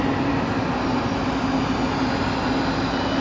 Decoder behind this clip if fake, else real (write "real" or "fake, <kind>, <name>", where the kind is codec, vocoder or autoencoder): real